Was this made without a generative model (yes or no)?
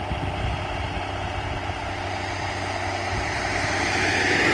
yes